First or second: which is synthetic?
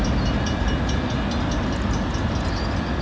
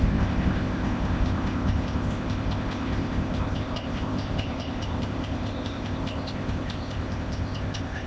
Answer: second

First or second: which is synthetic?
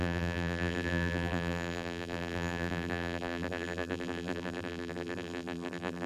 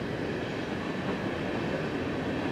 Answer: first